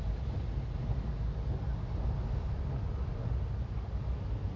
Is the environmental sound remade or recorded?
recorded